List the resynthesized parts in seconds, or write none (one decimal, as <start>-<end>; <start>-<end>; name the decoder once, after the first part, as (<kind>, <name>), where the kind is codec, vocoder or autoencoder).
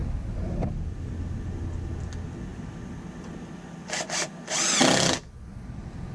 none